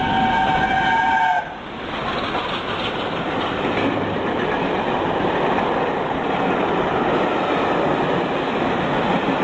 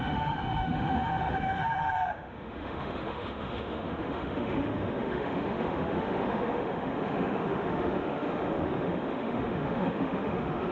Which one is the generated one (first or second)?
second